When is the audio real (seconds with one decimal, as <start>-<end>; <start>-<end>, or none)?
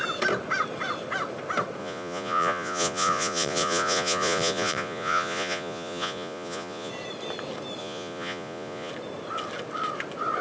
0.0-1.8; 6.9-7.8; 8.9-10.4